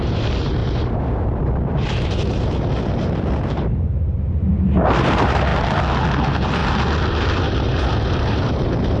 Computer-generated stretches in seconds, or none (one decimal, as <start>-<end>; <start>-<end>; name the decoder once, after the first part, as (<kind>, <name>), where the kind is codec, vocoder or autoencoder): 0.0-5.5 (vocoder, BigVGAN v2); 6.1-6.6; 7.1-9.0